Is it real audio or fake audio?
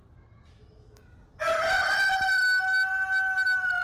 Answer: real